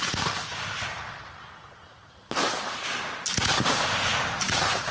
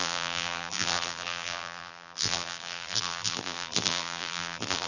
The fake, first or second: second